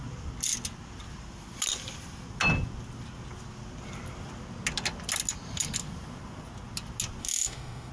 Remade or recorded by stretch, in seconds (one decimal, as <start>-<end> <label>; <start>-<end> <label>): 0.0-7.2 recorded; 7.2-7.9 remade